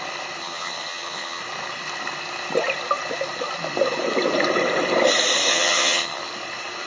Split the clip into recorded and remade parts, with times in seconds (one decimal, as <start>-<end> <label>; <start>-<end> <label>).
0.0-0.4 recorded; 0.4-1.4 remade; 1.4-5.5 recorded; 5.5-6.2 remade; 6.2-6.9 recorded